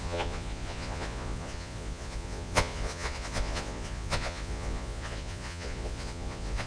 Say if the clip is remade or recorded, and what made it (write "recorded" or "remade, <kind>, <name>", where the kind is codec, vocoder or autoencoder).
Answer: remade, vocoder, Vocos